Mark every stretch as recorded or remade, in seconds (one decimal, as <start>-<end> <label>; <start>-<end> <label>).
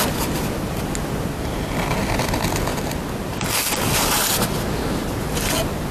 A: 0.0-5.9 recorded